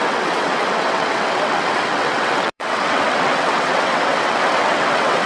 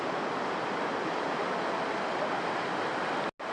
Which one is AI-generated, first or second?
first